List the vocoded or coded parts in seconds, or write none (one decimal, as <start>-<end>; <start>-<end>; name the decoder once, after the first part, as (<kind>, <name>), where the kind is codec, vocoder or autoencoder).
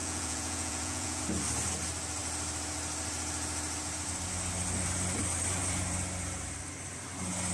0.0-1.2 (vocoder, Vocos)